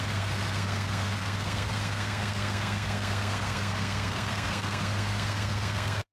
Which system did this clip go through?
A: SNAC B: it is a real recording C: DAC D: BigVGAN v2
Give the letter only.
A